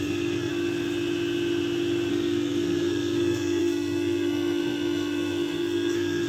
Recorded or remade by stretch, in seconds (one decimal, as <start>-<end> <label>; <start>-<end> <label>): 0.0-0.5 remade; 0.5-2.1 recorded; 2.1-6.3 remade